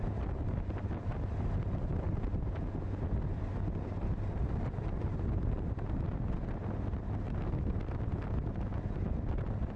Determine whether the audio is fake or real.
real